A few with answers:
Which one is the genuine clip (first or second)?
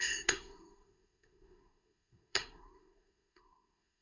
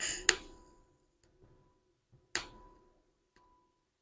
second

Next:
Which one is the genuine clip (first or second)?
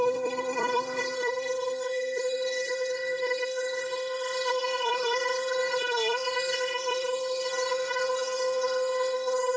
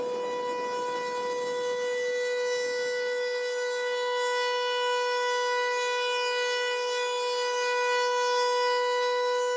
second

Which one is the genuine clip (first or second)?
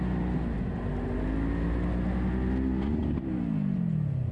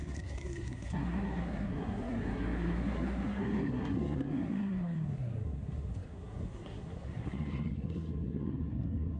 first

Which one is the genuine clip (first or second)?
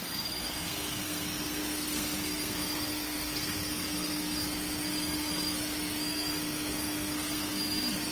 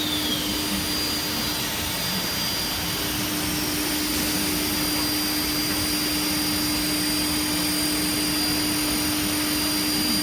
second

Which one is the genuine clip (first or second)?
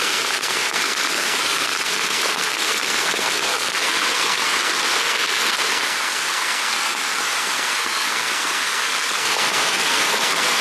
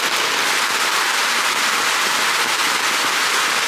second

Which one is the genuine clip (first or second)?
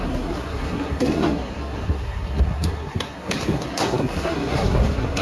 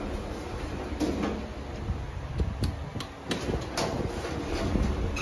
second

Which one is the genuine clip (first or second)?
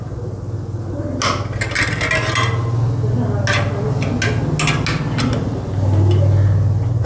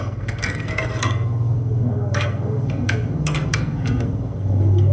first